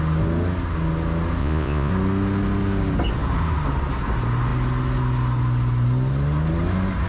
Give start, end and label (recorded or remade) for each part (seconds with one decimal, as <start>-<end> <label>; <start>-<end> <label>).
0.0-1.4 recorded; 1.4-1.9 remade; 1.9-7.1 recorded